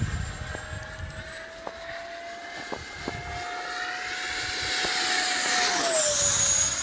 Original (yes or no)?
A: yes